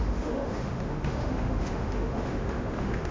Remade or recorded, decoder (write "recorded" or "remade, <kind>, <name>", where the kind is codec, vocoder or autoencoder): remade, autoencoder, DAC-VAE